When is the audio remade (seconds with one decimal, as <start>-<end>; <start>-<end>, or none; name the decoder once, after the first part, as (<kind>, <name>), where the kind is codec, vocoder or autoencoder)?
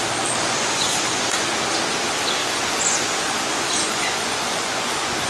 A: 0.4-1.5 (vocoder, Vocos); 2.4-5.3